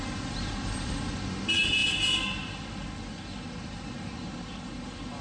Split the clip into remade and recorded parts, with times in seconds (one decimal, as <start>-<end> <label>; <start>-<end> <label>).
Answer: 0.0-5.2 recorded